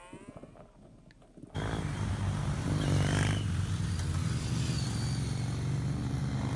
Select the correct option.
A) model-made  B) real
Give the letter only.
B